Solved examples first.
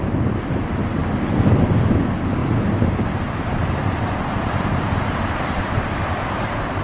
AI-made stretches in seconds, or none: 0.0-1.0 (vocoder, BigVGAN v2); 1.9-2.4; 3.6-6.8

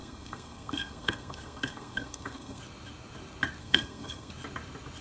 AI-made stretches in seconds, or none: 0.0-2.6 (codec, SNAC); 3.6-4.3